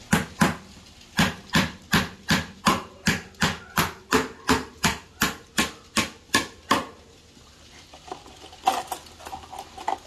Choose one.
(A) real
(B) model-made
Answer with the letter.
A